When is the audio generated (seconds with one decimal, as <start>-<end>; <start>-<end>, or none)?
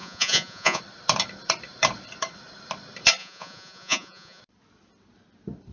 0.0-0.8; 3.2-4.4